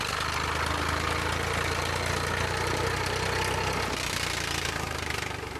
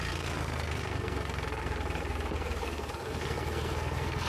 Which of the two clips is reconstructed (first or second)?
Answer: second